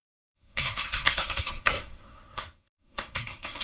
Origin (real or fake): fake